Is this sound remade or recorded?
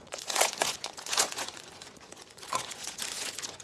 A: remade